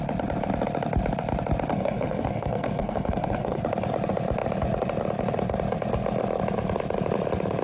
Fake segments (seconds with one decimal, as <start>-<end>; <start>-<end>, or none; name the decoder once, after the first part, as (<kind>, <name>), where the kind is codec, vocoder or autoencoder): 1.7-3.6 (codec, SNAC)